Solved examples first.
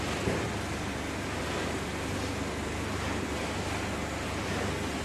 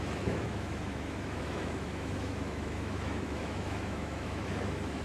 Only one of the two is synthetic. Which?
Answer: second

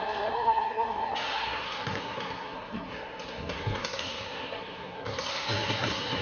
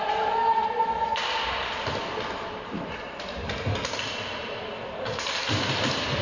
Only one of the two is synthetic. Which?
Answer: first